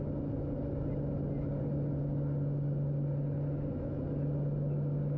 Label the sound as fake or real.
real